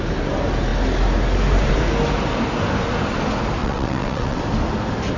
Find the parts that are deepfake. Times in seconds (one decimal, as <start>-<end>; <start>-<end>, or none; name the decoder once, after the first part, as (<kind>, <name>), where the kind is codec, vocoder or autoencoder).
3.6-4.4 (vocoder, WaveNeXt)